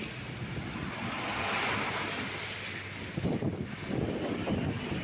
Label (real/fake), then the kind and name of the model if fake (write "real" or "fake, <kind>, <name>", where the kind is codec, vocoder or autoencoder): real